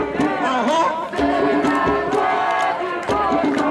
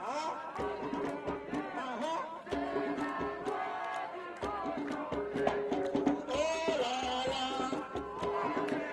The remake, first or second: first